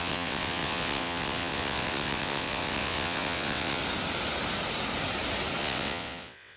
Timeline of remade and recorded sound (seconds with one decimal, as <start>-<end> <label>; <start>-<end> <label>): 0.0-3.8 remade; 3.8-5.6 recorded; 5.6-6.6 remade

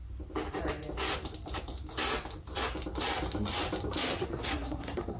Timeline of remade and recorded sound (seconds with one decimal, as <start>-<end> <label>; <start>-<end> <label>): 0.0-4.1 recorded; 4.1-5.2 remade